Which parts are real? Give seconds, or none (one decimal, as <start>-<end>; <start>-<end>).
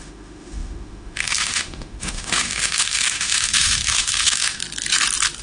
4.6-5.4